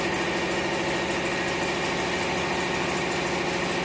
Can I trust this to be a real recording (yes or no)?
yes